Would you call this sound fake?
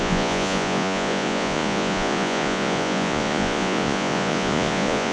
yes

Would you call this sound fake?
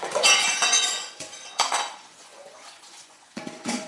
yes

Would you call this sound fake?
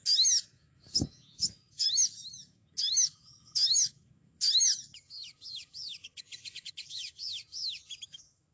yes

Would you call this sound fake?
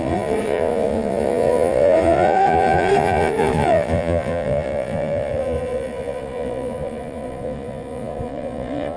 yes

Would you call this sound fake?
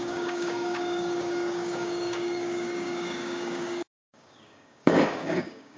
yes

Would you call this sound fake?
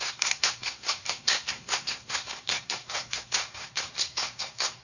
yes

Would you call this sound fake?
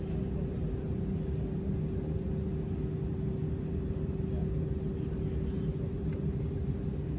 no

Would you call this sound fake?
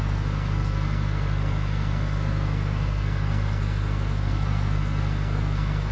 yes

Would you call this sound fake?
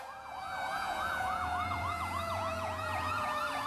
yes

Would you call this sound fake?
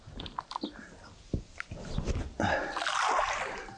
no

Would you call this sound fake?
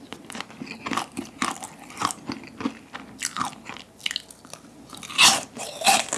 no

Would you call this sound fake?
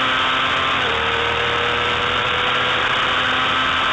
no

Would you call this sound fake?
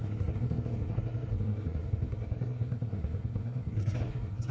yes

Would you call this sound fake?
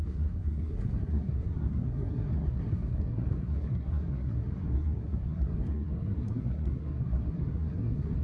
yes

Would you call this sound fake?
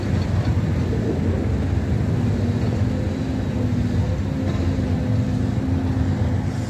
no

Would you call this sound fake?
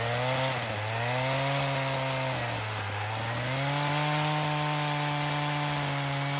no